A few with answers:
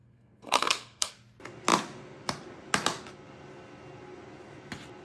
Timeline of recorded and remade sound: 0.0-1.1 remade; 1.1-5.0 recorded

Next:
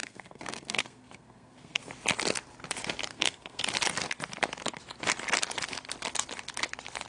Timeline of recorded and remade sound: 0.0-1.9 remade; 1.9-3.1 recorded; 3.1-3.6 remade; 3.6-7.1 recorded

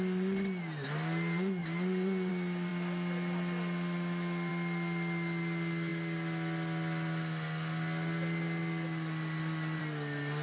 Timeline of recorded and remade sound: 0.0-10.4 recorded

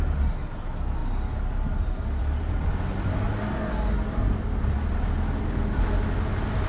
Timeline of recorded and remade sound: 0.0-6.7 recorded

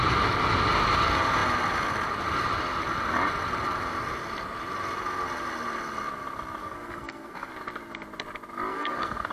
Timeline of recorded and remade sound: 0.0-6.6 recorded; 6.6-7.5 remade; 7.5-8.7 recorded; 8.7-9.3 remade